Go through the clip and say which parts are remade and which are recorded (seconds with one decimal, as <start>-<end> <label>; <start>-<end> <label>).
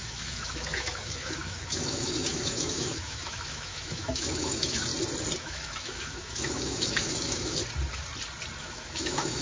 0.0-4.9 remade; 4.9-5.4 recorded; 5.4-7.6 remade; 7.6-8.6 recorded; 8.6-9.4 remade